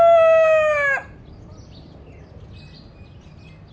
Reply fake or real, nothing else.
real